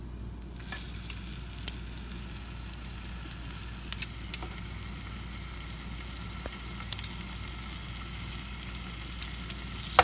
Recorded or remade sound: recorded